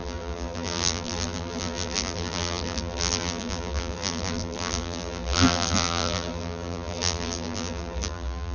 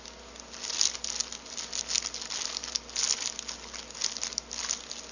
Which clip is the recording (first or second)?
second